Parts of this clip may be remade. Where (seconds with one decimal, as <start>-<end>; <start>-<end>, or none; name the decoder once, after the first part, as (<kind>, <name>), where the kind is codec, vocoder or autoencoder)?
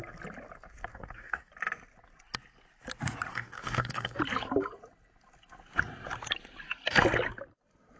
0.9-1.5 (codec, DAC); 3.3-4.2